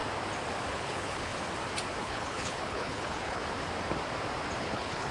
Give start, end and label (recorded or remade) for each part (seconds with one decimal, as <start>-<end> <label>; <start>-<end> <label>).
0.0-0.7 recorded; 0.7-1.3 remade; 1.3-2.0 recorded; 2.0-3.4 remade; 3.4-4.6 recorded; 4.6-5.1 remade